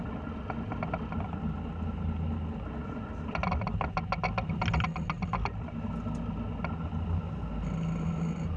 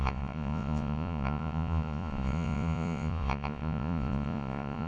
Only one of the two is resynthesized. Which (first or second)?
second